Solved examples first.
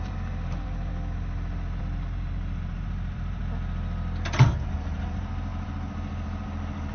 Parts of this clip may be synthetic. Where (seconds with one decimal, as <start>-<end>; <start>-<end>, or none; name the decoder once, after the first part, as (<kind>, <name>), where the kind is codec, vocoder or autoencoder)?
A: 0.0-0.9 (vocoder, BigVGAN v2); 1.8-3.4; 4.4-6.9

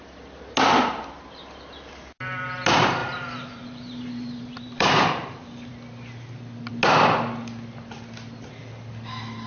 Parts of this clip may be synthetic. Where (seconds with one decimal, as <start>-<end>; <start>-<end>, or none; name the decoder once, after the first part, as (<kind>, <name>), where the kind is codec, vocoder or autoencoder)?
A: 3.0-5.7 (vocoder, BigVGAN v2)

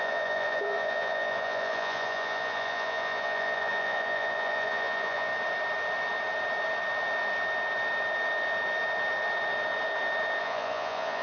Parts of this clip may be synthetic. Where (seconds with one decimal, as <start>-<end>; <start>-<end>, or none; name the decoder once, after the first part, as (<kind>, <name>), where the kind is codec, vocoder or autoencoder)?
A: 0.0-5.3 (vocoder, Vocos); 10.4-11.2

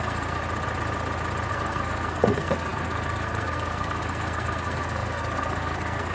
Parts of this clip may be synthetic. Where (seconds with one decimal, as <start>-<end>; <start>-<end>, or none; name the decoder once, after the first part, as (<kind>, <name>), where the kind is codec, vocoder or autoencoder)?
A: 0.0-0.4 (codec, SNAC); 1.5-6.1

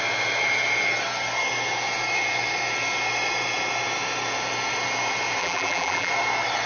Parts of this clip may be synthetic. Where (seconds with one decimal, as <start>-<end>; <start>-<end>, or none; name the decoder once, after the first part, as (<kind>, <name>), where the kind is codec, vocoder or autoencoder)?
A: 5.4-6.1 (vocoder, BigVGAN v2)